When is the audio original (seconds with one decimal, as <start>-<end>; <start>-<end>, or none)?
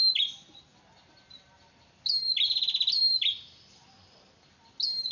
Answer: 0.0-5.1